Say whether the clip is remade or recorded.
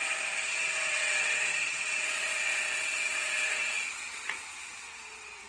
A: remade